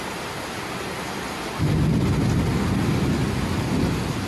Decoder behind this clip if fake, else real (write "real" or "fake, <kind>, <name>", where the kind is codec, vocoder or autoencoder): real